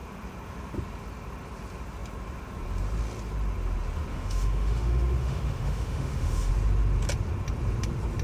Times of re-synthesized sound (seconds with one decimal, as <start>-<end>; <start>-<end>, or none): 4.1-6.5